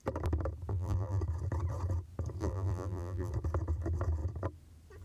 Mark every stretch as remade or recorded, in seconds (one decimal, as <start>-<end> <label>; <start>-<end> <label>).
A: 0.0-0.7 recorded; 0.7-1.2 remade; 1.2-2.4 recorded; 2.4-3.3 remade; 3.3-5.0 recorded